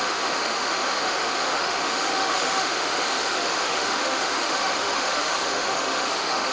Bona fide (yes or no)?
no